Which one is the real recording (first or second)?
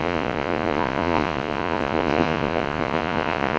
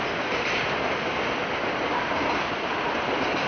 second